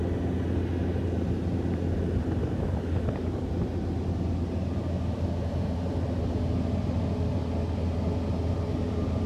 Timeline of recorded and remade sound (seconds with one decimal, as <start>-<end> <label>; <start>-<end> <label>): 0.0-2.4 recorded; 2.4-3.5 remade; 3.5-9.3 recorded